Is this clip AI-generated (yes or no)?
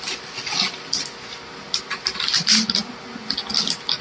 no